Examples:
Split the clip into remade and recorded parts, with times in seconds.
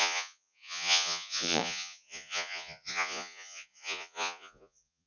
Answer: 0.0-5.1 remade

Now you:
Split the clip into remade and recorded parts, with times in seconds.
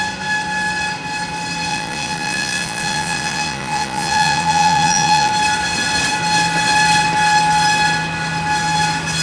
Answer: 0.0-1.7 recorded; 1.7-5.3 remade; 5.3-9.2 recorded